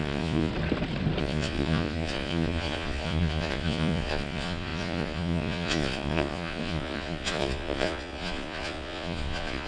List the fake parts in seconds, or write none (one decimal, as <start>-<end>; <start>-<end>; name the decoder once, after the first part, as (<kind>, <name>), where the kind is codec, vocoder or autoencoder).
0.0-0.5 (vocoder, Vocos); 1.2-9.7